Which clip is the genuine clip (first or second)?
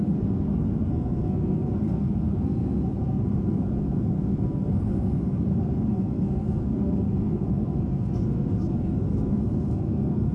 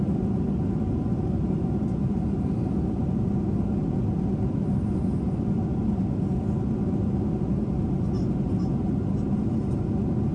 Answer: second